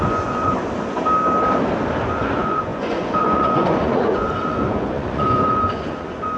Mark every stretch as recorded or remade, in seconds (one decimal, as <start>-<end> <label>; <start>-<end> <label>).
0.0-0.6 remade; 0.6-2.1 recorded; 2.1-6.4 remade